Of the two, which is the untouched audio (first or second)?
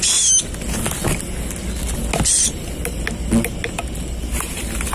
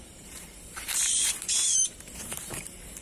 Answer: first